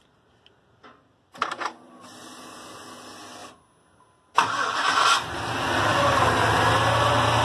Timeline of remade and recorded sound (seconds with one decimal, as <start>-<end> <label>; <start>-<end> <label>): 0.0-3.4 recorded; 3.4-4.8 remade; 4.8-7.4 recorded